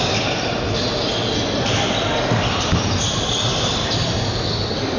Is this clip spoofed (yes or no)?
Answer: no